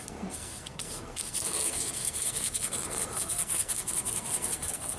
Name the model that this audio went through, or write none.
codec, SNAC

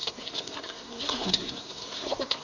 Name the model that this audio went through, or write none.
codec, SNAC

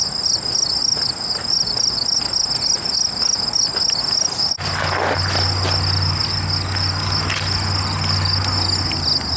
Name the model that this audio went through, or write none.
none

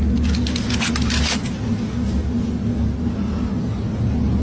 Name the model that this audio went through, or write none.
none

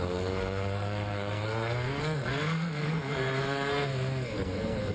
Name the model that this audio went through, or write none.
codec, SNAC